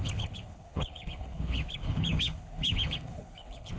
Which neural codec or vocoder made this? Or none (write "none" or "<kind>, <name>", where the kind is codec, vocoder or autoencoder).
codec, HILCodec